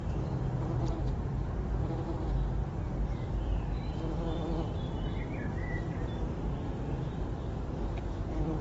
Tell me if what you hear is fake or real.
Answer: fake